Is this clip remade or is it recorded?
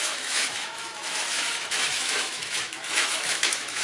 remade